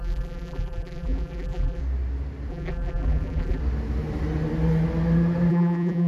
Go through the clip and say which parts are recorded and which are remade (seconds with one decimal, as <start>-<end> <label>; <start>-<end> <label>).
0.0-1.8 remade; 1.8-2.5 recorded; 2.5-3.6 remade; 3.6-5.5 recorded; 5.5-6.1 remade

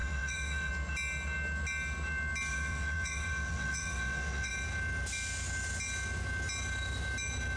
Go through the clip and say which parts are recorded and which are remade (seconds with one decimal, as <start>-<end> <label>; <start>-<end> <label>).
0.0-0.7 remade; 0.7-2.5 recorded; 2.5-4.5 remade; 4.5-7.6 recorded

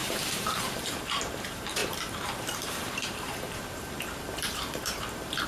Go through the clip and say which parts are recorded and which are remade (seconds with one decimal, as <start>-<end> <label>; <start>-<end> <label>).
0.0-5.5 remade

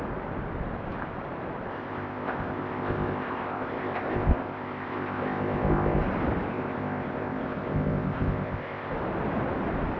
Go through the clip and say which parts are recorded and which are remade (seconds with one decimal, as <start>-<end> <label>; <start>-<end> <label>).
0.0-1.7 recorded; 1.7-6.0 remade; 6.0-6.5 recorded; 6.5-8.9 remade; 8.9-10.0 recorded

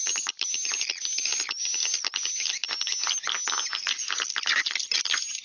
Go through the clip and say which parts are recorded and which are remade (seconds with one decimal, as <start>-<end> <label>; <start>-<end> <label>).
0.0-5.4 recorded